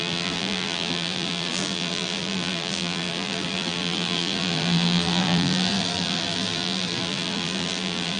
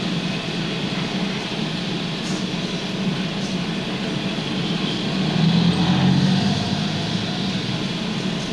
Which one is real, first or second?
second